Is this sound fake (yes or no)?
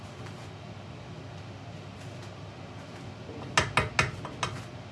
no